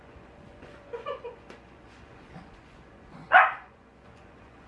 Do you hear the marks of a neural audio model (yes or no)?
yes